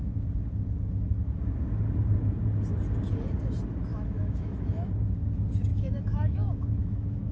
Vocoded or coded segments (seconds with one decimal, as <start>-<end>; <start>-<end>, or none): 3.9-4.9; 5.7-7.3